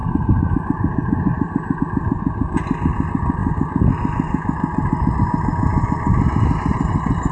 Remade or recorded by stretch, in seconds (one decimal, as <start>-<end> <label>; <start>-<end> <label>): 0.0-1.8 remade; 1.8-7.3 recorded